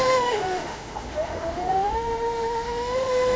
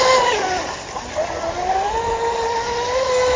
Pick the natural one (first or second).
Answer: second